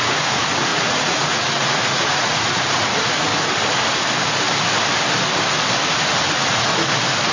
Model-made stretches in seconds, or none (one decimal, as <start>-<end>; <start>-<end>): 0.0-3.3; 6.3-6.7